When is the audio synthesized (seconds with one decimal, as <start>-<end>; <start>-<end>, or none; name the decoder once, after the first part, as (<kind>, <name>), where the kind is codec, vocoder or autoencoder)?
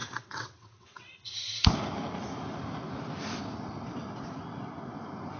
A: 0.0-1.6 (vocoder, WaveNeXt)